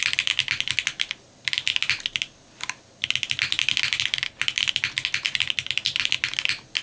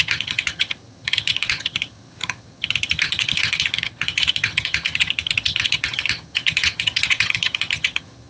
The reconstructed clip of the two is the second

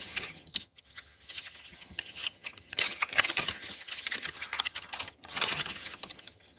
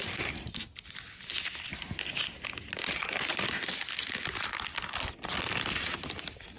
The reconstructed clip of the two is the first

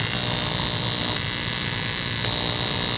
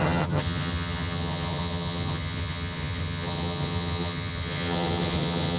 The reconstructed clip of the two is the second